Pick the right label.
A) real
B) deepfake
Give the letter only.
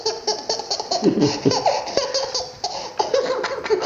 A